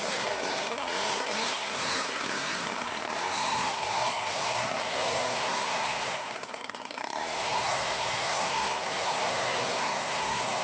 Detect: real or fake fake